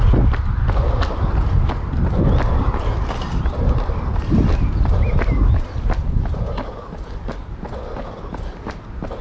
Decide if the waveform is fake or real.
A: real